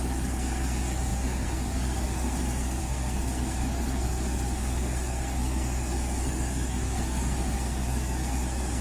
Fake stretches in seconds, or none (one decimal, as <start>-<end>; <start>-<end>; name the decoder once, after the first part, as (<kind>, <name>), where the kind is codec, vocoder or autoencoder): 0.0-8.8 (codec, SNAC)